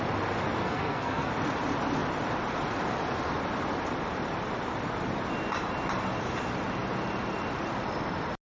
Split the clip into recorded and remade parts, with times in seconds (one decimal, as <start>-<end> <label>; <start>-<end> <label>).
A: 0.0-0.6 recorded; 0.6-1.3 remade; 1.3-8.5 recorded